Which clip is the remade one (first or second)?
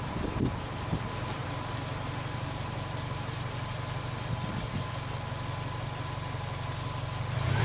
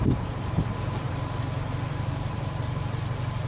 second